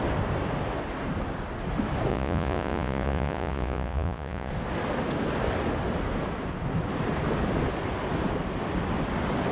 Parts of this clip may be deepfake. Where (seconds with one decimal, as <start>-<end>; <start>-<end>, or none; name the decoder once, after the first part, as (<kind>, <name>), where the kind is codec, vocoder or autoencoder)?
2.1-4.5 (vocoder, Vocos)